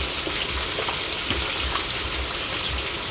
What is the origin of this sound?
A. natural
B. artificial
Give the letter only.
A